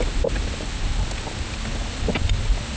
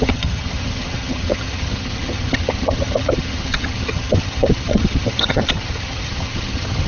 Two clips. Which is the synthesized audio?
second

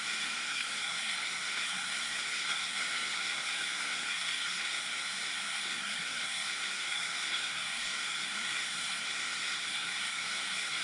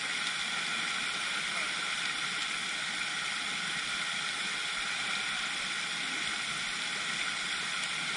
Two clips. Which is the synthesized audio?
first